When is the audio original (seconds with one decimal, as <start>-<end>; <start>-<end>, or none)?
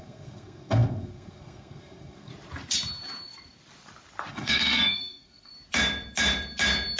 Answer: 2.3-4.3; 5.5-7.0